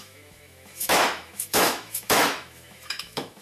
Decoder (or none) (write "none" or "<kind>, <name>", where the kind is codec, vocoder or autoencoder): autoencoder, DAC-VAE